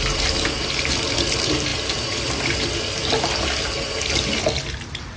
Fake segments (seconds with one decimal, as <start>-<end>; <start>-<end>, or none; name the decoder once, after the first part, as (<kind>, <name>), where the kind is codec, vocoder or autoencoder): none